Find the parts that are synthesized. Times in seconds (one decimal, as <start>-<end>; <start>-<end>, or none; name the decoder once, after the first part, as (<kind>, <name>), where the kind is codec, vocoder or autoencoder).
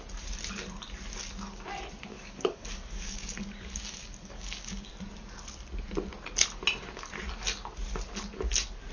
2.1-4.9 (codec, DAC)